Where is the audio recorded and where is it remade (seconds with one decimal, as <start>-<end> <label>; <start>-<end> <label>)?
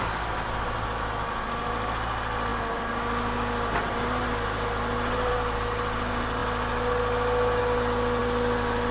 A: 0.0-8.9 recorded